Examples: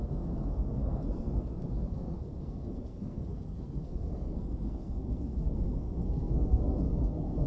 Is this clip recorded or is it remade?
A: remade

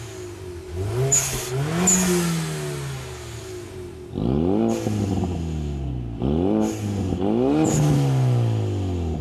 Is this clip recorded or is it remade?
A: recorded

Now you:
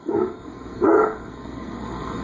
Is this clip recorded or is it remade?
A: remade